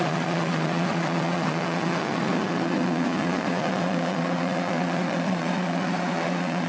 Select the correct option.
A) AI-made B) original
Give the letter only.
A